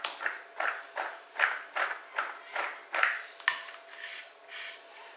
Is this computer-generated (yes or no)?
no